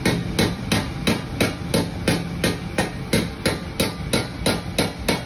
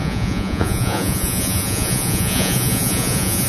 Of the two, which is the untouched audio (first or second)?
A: first